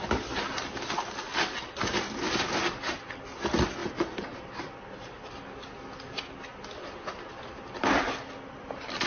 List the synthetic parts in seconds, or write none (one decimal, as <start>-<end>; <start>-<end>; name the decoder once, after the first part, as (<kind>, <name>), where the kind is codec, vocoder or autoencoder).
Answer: 3.8-5.3 (vocoder, BigVGAN v2)